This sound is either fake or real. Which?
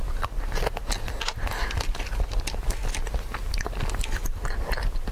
real